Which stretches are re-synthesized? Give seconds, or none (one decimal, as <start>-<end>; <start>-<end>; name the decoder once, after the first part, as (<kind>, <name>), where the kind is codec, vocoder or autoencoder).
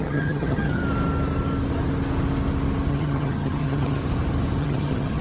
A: 0.0-0.8 (vocoder, HiFi-GAN); 2.9-4.0; 4.6-5.2